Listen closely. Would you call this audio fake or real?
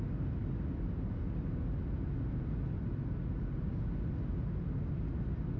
real